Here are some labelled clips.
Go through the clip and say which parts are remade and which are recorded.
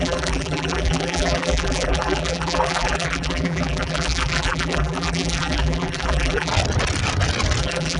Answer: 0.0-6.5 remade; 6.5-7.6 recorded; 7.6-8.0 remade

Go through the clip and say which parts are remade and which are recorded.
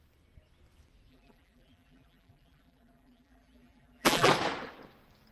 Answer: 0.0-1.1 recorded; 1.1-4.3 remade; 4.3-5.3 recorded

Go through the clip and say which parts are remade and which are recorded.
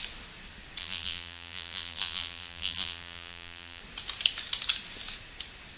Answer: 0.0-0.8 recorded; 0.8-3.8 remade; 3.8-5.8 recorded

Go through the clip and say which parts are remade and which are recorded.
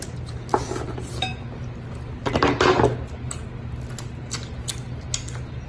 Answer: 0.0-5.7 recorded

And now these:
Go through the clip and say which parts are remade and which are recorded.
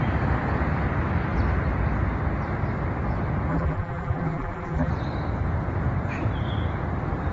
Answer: 0.0-3.5 recorded; 3.5-4.9 remade; 4.9-7.3 recorded